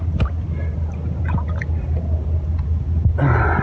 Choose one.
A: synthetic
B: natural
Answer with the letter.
B